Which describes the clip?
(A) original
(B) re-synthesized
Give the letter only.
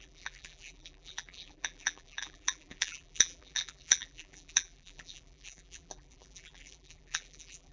B